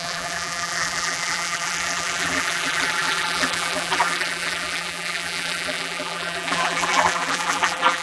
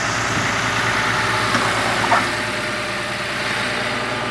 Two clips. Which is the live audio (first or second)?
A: second